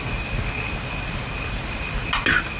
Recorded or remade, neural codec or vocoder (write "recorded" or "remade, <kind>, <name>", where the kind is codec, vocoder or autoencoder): recorded